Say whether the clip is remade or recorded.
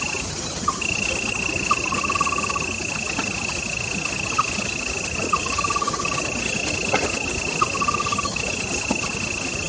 recorded